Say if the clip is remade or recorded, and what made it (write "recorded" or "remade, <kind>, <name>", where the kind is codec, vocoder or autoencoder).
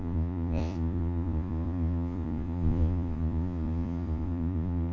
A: remade, vocoder, Vocos